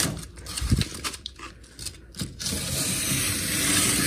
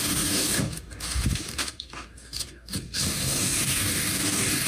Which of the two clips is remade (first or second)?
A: second